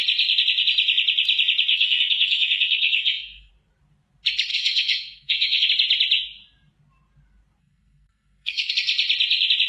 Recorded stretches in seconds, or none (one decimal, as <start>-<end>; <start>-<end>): 0.0-1.7; 3.5-4.5; 5.7-7.6; 8.7-9.7